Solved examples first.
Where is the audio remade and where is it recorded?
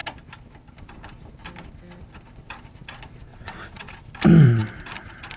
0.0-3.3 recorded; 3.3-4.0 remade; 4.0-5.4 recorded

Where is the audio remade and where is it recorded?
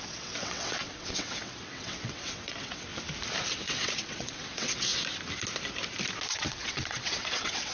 0.0-2.9 remade; 2.9-3.5 recorded; 3.5-4.9 remade; 4.9-6.3 recorded; 6.3-7.7 remade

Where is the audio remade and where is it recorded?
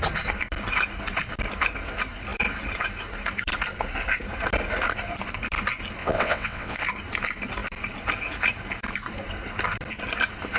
0.0-6.0 recorded; 6.0-6.8 remade; 6.8-10.6 recorded